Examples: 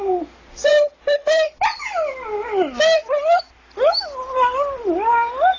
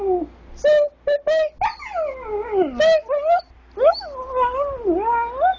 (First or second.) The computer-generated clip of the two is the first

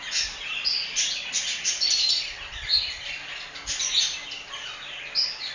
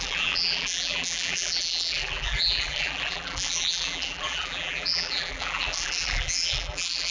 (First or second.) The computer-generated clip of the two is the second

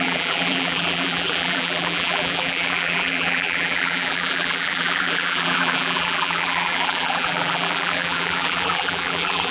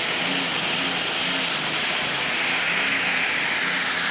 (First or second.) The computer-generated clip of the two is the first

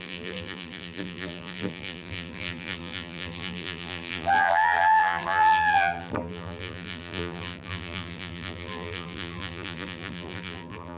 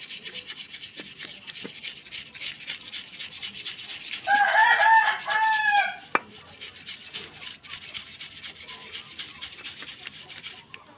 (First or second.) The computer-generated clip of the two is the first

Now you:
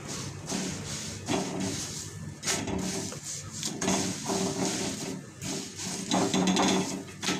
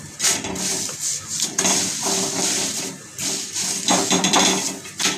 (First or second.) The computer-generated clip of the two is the second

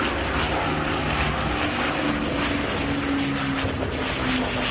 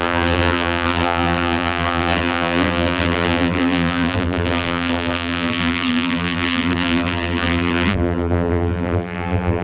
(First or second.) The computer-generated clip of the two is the second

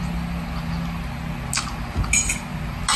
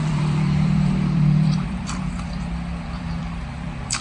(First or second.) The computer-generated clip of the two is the second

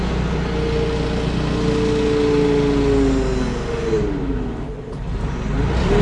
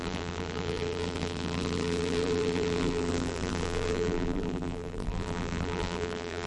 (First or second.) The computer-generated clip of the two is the second